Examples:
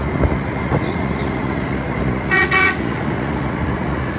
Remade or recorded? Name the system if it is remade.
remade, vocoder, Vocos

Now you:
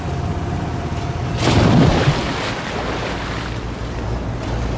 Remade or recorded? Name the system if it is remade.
recorded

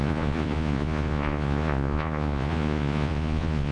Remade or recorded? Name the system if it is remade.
remade, vocoder, Vocos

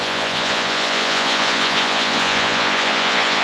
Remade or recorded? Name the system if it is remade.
remade, vocoder, Vocos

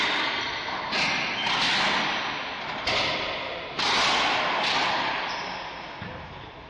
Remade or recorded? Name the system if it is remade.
recorded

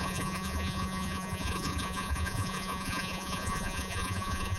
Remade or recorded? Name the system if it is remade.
remade, vocoder, Vocos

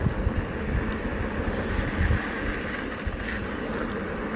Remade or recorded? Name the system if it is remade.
recorded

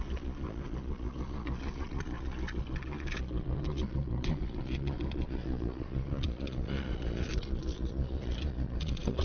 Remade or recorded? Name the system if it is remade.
remade, vocoder, Vocos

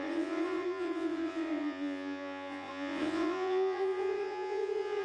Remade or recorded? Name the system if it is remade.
remade, vocoder, Vocos